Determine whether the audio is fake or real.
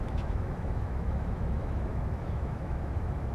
fake